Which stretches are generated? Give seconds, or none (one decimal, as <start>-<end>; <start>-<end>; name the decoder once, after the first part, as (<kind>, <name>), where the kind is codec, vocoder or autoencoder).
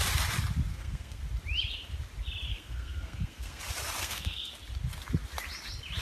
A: 0.7-1.2 (codec, SNAC); 2.5-3.6; 4.0-4.5